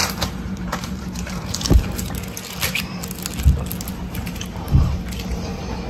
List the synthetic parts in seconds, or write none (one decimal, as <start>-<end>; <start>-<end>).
0.0-2.1; 3.9-4.9